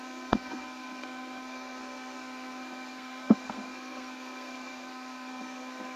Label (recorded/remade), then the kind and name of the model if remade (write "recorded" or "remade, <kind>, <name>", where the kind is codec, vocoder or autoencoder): remade, codec, SNAC